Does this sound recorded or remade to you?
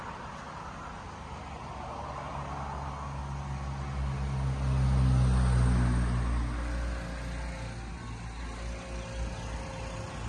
recorded